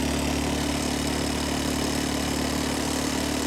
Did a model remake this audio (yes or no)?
no